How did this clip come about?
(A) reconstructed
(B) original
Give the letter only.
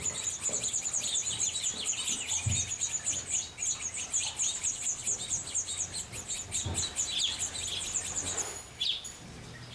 B